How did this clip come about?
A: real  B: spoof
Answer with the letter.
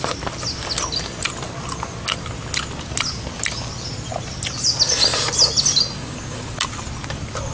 A